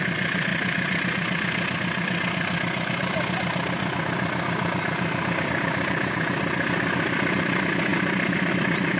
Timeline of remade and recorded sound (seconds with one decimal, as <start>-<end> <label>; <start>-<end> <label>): 0.0-9.0 recorded